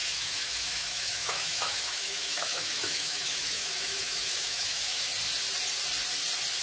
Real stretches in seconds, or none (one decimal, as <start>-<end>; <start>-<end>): 5.1-6.6